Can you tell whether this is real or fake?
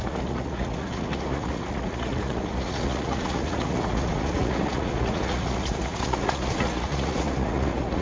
fake